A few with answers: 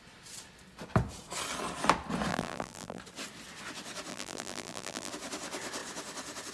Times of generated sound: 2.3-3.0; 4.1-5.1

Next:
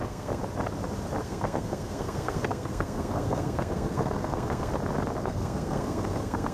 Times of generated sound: 0.0-0.4; 1.2-4.7; 5.2-6.5

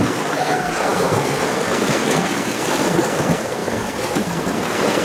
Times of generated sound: 0.0-5.0

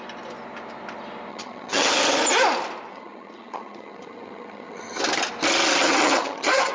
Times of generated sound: 1.3-1.9; 2.9-5.0; 5.8-6.7

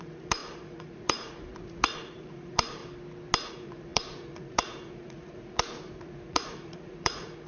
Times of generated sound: 0.0-2.8; 3.5-7.5